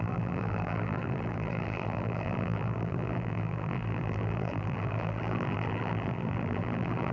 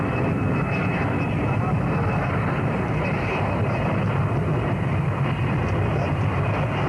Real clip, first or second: second